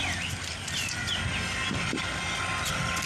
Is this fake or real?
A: real